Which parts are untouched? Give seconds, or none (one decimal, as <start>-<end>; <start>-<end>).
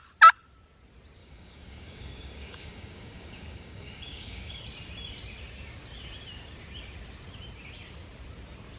0.0-1.2; 4.6-8.8